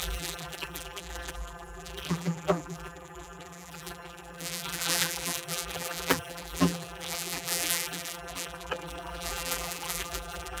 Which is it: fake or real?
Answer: fake